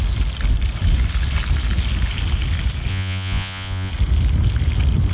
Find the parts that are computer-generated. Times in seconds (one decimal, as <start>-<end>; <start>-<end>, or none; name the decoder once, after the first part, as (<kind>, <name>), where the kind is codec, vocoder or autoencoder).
2.9-3.9 (vocoder, Vocos)